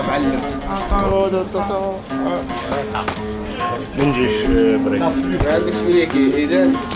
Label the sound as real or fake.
real